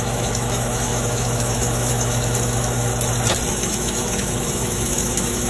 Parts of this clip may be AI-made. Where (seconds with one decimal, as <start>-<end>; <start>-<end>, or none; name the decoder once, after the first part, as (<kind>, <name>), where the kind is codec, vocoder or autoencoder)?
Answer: 0.0-2.9 (autoencoder, DAC-VAE); 3.5-5.5